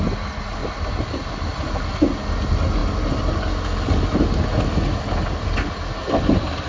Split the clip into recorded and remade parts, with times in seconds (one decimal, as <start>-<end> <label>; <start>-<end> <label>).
0.0-6.7 recorded